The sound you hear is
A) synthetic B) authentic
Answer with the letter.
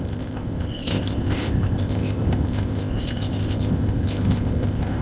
A